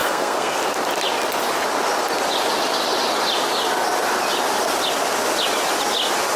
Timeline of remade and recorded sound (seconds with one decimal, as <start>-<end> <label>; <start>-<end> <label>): 0.0-0.6 remade; 0.6-6.4 recorded